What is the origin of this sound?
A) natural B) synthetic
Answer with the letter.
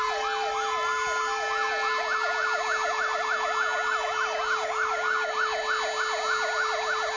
A